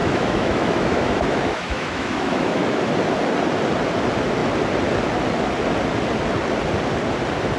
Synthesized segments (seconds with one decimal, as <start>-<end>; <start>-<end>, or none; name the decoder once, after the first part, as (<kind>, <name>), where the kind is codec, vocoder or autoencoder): 0.0-2.8 (autoencoder, DAC-VAE)